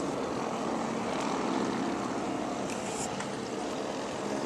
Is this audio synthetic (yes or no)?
no